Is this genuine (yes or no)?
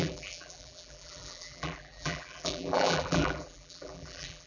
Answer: no